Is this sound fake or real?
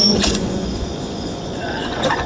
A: fake